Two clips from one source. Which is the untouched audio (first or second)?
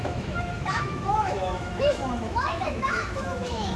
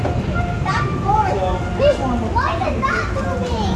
second